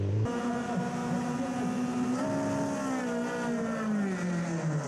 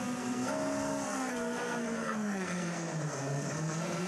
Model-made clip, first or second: second